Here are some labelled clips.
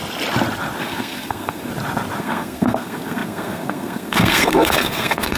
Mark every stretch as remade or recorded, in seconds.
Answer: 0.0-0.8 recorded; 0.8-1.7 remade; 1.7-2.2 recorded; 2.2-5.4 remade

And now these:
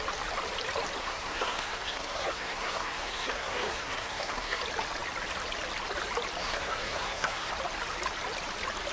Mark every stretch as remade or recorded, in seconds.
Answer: 0.0-1.0 recorded; 1.0-4.6 remade; 4.6-6.4 recorded; 6.4-7.5 remade; 7.5-8.9 recorded

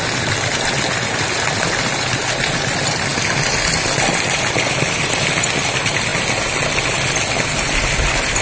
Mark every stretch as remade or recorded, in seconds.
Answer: 0.0-8.4 recorded

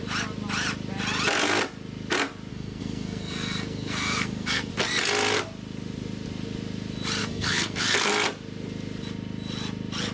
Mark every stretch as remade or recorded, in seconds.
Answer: 0.0-2.5 recorded; 2.5-4.7 remade; 4.7-7.2 recorded; 7.2-8.1 remade; 8.1-10.1 recorded

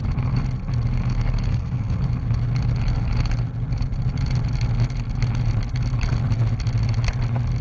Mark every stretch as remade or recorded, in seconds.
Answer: 0.0-1.5 recorded; 1.5-2.0 remade; 2.0-7.6 recorded